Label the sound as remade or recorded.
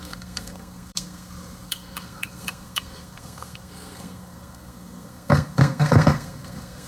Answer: remade